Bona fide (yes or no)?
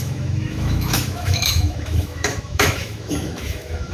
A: no